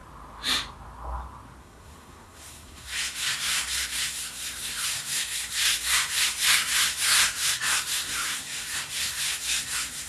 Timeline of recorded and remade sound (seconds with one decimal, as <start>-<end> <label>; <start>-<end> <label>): 0.0-1.6 recorded; 1.6-10.1 remade